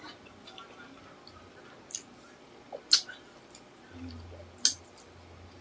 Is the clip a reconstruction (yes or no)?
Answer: no